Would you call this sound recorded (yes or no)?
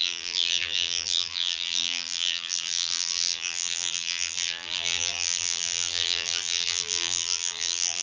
no